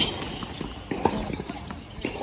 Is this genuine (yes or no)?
yes